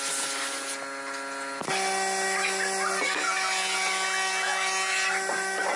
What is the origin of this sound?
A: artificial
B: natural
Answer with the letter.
B